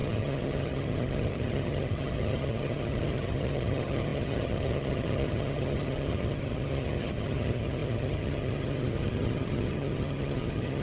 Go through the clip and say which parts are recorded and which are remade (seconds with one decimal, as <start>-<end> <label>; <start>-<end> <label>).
0.0-10.8 remade